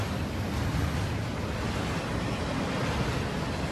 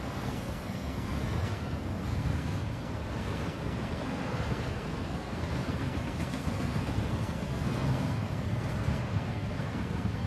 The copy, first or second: second